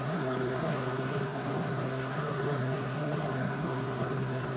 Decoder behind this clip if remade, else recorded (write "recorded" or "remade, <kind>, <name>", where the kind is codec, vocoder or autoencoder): remade, codec, SNAC